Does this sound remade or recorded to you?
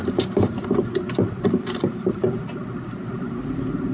remade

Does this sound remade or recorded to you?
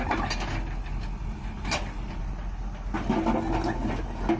recorded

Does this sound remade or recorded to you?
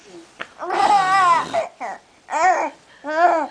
recorded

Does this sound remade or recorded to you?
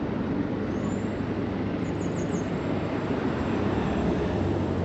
remade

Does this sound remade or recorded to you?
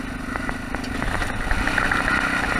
recorded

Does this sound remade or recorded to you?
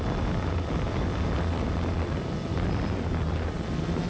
remade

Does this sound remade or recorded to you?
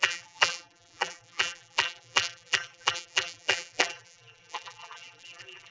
remade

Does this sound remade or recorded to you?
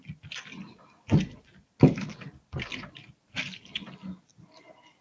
recorded